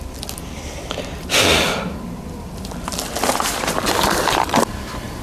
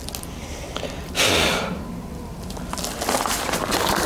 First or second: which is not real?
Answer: first